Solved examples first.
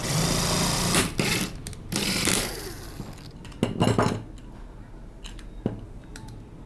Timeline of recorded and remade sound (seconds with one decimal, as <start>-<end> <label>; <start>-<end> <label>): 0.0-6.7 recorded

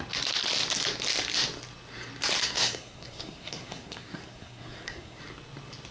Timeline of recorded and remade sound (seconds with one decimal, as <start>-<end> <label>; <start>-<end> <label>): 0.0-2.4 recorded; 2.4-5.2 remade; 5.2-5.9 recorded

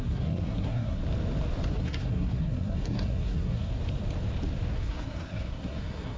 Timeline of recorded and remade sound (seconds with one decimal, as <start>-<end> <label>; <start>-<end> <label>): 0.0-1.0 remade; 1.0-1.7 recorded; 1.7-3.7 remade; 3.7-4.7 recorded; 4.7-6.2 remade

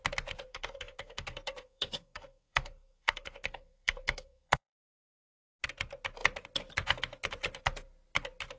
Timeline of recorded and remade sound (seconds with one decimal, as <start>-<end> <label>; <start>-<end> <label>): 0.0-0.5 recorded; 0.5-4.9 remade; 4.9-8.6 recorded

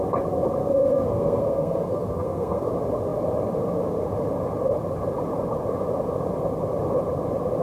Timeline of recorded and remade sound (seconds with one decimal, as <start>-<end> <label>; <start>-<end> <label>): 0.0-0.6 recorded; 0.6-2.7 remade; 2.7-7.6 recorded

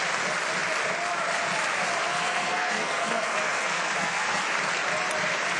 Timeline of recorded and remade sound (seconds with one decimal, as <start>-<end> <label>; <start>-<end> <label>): 0.0-2.1 recorded; 2.1-4.4 remade; 4.4-5.6 recorded